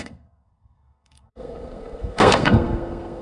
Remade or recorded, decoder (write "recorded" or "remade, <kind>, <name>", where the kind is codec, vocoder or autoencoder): remade, codec, SNAC